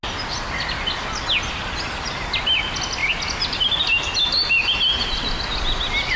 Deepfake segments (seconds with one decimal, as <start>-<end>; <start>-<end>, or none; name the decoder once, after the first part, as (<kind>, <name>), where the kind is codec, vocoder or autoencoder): none